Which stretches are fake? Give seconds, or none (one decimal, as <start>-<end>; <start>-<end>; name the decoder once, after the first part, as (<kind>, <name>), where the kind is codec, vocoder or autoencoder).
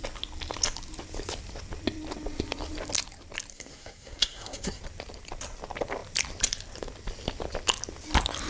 3.5-4.8 (codec, SNAC)